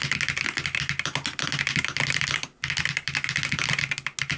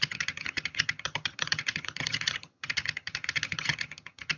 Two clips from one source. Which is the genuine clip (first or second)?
first